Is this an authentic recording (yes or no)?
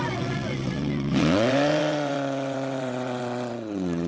no